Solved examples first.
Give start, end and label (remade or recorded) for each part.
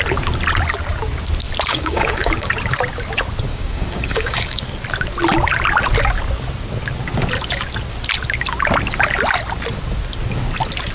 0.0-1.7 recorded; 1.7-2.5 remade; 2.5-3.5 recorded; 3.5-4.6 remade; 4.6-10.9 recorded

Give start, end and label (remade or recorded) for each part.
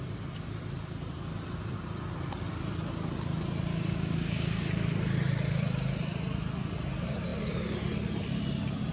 0.0-3.7 recorded; 3.7-4.7 remade; 4.7-8.9 recorded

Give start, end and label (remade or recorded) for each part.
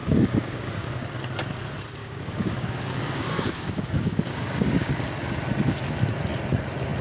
0.0-1.1 remade; 1.1-2.0 recorded; 2.0-4.9 remade; 4.9-7.0 recorded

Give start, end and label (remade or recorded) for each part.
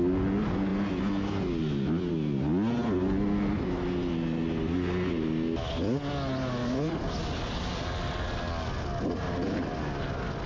0.0-10.5 recorded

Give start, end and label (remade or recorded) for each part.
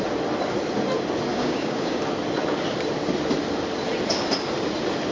0.0-1.3 recorded; 1.3-2.0 remade; 2.0-5.1 recorded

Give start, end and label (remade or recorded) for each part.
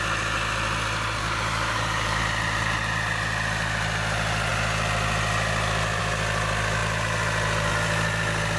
0.0-1.2 recorded; 1.2-2.2 remade; 2.2-8.6 recorded